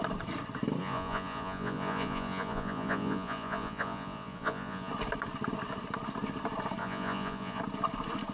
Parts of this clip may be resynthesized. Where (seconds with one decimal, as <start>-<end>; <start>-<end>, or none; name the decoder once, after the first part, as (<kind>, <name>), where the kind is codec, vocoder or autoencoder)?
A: 0.8-4.9 (vocoder, Vocos); 6.8-7.6